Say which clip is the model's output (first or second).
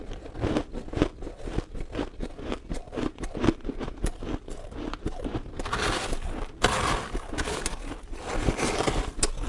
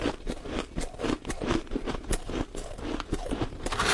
second